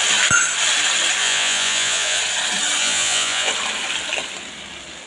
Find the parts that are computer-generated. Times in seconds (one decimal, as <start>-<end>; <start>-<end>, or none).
1.2-2.2; 2.8-3.5